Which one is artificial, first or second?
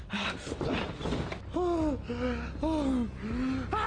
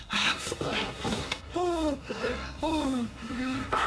second